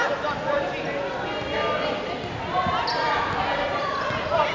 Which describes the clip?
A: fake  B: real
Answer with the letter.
B